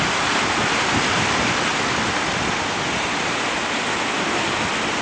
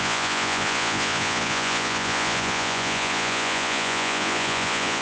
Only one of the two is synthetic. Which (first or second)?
second